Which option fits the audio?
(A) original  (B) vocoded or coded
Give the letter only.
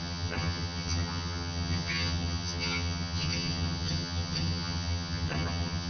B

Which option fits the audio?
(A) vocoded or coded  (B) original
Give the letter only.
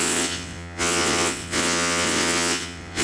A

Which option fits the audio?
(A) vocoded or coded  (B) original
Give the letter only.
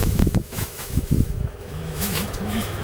A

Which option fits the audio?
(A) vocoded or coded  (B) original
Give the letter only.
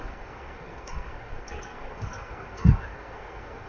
A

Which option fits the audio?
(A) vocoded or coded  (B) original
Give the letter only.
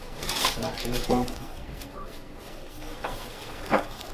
A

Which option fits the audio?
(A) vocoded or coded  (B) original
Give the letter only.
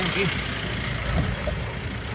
B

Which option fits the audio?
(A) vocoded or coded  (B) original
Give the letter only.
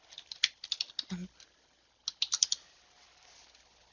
B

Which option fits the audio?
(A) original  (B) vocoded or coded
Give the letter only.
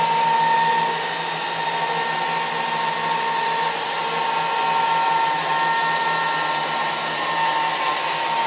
A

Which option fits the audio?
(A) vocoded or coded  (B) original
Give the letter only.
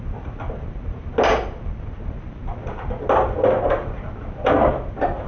B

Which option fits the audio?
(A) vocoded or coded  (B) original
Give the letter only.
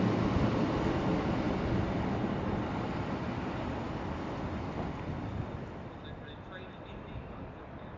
B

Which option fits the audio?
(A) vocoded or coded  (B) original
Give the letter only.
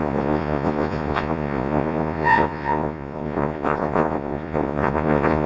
A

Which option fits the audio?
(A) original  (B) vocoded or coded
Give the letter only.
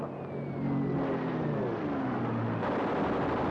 A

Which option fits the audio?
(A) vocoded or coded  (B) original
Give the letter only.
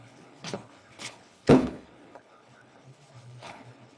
A